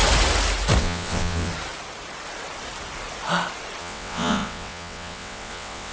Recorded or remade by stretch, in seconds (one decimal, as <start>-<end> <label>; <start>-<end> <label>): 0.0-0.8 recorded; 0.8-1.5 remade; 1.5-3.8 recorded; 3.8-5.9 remade